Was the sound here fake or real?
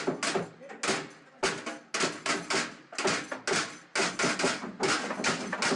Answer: real